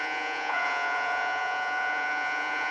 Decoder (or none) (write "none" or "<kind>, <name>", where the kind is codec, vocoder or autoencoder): vocoder, Vocos